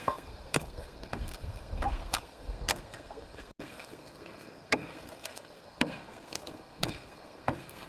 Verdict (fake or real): fake